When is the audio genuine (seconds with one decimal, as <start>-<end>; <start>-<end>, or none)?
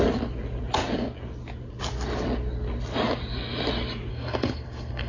0.0-4.1